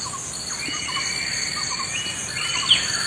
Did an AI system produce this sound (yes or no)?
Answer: no